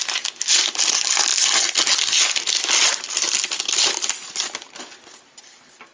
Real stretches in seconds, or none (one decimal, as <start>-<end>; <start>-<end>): 0.0-5.9